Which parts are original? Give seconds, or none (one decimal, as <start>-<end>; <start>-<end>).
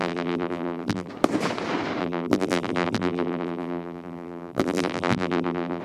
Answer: 1.1-2.0